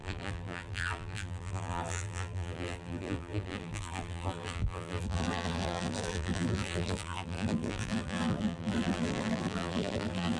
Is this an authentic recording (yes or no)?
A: no